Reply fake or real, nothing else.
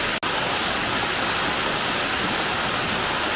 real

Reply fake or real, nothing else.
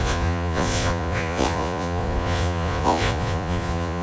fake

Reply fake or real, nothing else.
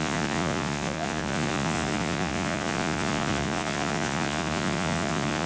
fake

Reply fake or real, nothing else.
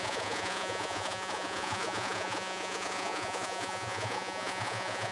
fake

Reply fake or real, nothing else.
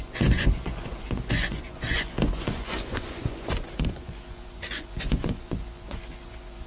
fake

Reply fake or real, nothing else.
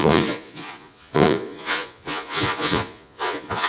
fake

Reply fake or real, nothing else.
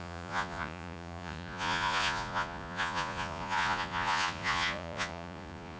fake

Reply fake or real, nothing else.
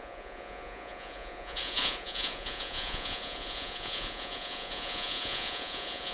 fake